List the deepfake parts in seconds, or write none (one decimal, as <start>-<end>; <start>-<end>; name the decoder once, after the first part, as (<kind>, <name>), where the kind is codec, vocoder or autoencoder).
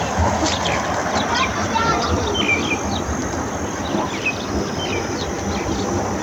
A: none